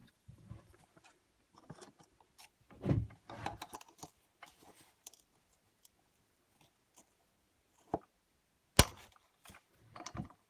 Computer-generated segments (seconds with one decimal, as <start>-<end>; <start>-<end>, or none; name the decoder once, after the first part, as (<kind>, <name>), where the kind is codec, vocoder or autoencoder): 0.0-1.2 (vocoder, BigVGAN v2)